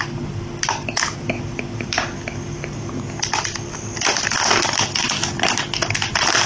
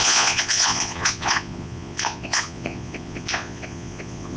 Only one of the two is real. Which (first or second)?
first